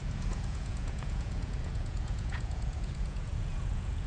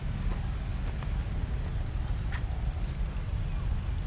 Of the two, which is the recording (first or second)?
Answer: second